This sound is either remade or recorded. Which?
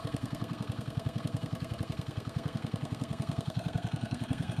remade